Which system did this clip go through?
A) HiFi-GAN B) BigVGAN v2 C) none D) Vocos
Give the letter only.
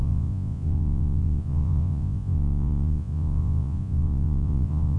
D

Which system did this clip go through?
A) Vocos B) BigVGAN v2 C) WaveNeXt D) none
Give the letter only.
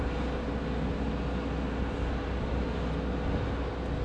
D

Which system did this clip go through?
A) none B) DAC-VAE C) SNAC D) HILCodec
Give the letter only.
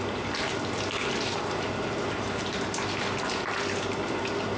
A